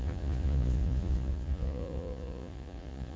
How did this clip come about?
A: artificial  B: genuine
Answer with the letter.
A